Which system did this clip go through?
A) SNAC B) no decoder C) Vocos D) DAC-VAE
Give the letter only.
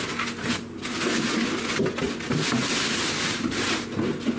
B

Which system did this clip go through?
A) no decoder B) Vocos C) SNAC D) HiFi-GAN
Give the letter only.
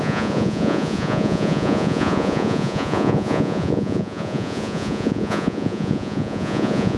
B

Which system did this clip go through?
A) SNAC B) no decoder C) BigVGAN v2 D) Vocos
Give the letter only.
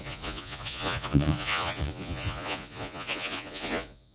D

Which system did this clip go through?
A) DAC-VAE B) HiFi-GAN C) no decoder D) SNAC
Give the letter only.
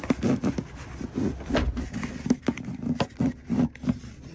C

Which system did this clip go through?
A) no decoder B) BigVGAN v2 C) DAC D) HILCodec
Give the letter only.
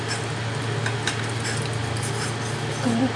A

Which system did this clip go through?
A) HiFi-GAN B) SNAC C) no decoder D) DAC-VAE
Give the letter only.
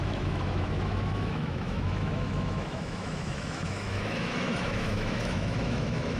D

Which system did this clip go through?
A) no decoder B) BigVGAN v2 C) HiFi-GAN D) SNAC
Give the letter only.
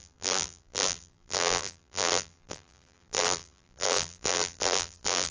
B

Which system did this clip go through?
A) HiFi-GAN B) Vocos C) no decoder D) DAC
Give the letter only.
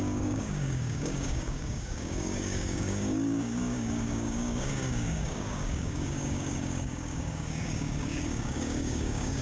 D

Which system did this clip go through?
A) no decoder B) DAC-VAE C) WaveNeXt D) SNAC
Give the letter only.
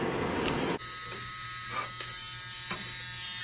A